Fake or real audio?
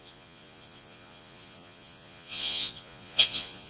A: fake